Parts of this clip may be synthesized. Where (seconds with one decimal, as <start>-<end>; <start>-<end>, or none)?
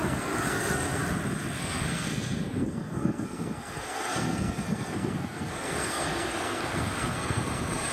0.0-1.0; 1.6-7.9